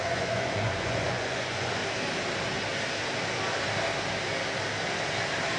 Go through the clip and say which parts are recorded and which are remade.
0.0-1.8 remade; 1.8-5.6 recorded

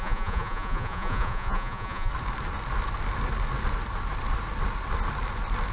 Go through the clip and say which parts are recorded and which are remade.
0.0-2.1 remade; 2.1-5.7 recorded

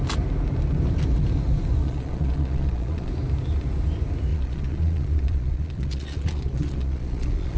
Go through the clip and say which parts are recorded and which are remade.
0.0-1.8 recorded; 1.8-3.1 remade; 3.1-4.3 recorded; 4.3-7.6 remade